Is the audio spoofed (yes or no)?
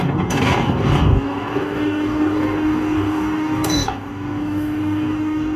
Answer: yes